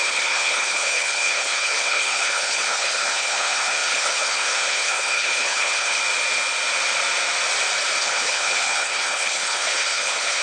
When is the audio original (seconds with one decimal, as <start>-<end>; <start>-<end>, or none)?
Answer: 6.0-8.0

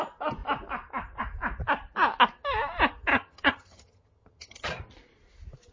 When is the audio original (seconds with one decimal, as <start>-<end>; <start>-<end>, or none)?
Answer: 0.0-3.1; 4.7-5.7

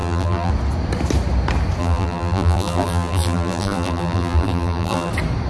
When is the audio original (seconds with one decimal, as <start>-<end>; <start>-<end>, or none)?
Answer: 0.5-1.8; 5.1-5.5